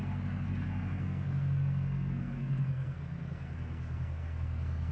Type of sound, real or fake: fake